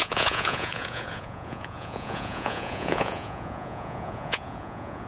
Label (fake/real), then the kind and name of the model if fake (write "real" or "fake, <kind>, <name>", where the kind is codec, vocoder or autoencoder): fake, vocoder, Vocos